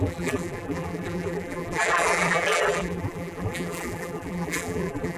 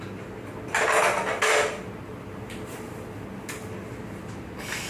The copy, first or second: first